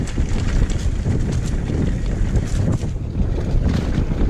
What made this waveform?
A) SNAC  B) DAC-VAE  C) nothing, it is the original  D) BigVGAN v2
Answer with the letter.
C